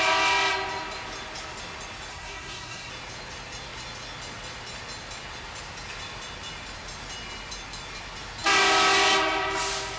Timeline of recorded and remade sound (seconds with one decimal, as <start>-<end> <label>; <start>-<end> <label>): 0.0-2.1 recorded; 2.1-2.9 remade; 2.9-10.0 recorded